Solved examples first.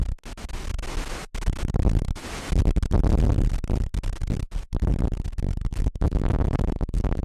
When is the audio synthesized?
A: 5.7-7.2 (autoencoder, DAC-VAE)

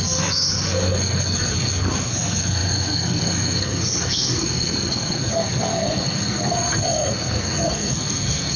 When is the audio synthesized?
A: 0.0-8.6 (codec, SNAC)